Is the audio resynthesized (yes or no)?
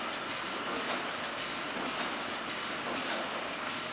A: no